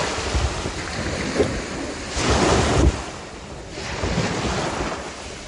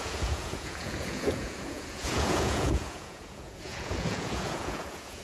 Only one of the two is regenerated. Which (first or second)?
second